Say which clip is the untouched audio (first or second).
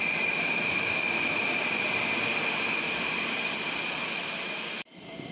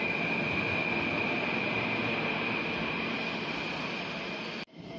second